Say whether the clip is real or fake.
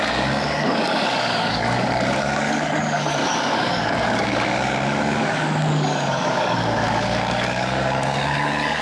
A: fake